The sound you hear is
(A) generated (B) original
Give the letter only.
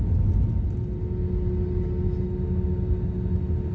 B